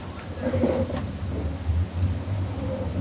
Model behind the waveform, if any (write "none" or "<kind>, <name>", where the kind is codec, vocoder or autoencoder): none